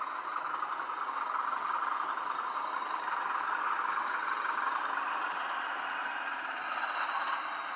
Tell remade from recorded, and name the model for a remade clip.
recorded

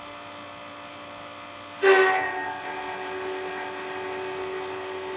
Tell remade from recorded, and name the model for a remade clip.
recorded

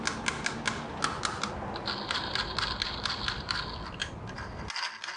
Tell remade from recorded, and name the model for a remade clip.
recorded